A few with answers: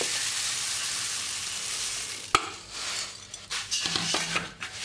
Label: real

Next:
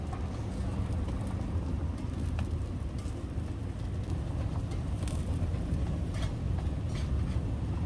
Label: real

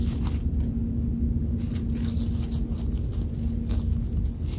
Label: real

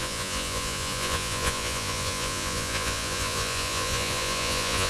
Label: fake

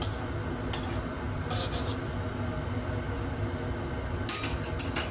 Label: real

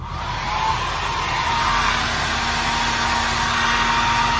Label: real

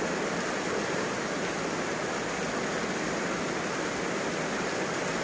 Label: real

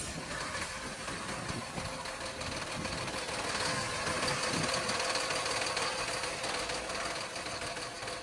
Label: real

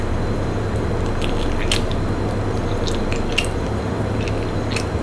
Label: real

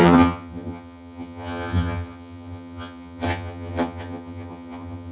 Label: fake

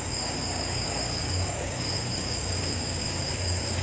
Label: fake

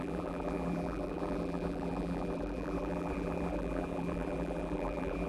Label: fake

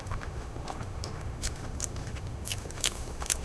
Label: fake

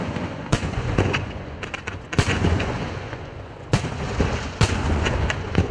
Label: fake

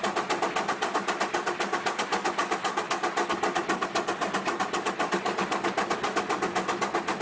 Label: real